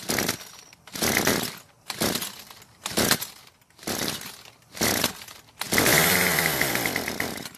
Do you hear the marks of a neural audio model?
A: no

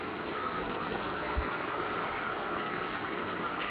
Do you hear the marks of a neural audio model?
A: yes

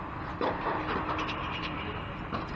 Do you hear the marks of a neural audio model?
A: yes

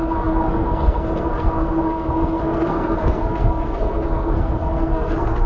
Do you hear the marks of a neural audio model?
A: yes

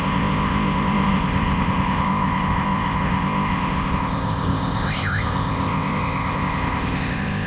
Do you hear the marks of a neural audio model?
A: yes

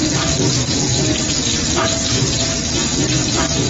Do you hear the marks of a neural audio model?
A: no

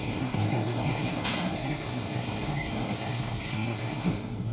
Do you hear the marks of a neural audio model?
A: yes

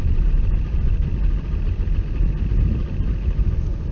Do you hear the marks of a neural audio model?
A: no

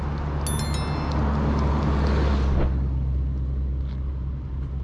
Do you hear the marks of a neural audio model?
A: no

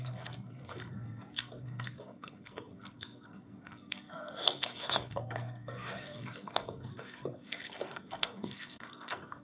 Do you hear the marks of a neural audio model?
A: yes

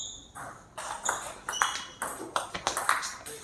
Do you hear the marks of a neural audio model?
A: no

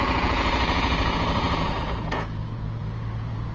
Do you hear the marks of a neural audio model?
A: yes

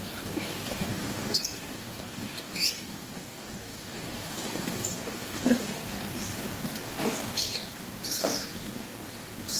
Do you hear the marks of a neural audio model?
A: yes